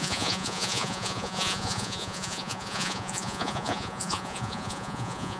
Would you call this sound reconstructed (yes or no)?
yes